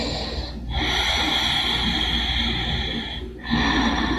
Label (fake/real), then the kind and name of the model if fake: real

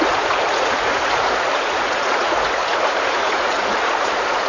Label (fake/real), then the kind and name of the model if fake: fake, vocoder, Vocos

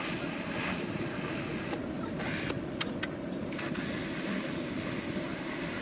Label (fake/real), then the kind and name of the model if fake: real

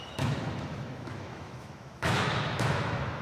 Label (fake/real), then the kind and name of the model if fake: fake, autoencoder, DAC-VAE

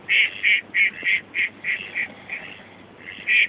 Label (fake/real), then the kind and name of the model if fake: real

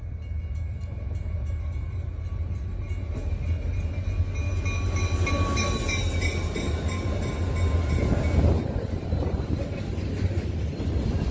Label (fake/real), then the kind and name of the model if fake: real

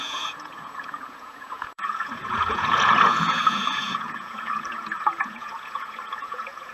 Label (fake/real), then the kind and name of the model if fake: fake, vocoder, Vocos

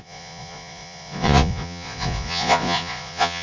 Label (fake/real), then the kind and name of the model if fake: fake, vocoder, Vocos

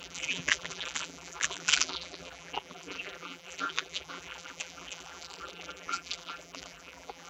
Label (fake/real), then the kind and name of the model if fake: fake, vocoder, BigVGAN v2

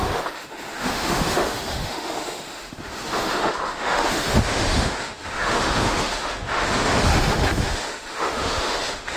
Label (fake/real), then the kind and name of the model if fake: fake, autoencoder, DAC-VAE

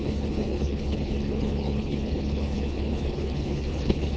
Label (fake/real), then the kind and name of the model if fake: fake, codec, HILCodec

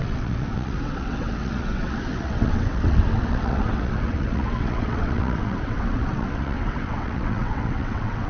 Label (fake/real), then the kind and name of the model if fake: fake, vocoder, WaveNeXt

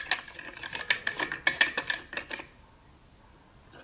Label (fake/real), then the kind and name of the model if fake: real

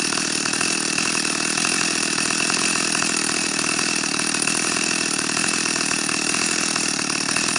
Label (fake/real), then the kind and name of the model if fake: fake, vocoder, BigVGAN v2